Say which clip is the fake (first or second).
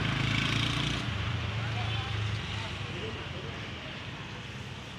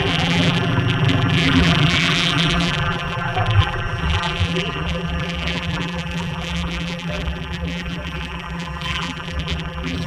second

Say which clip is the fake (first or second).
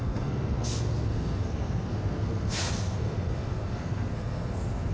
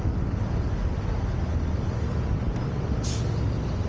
first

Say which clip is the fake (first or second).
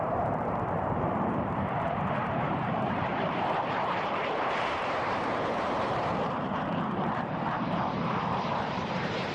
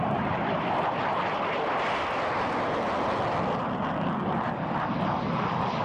first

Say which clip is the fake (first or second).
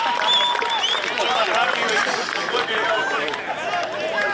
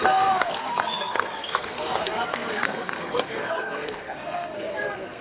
second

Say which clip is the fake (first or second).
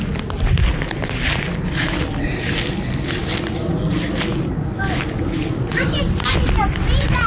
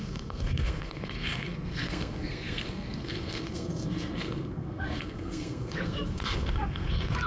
second